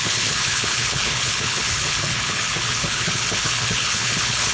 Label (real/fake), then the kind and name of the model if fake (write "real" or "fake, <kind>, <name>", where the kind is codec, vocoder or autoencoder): fake, codec, HILCodec